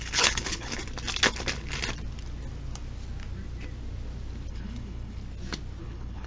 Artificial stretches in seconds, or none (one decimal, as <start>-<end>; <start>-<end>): 0.0-0.8; 4.5-5.2; 5.8-6.3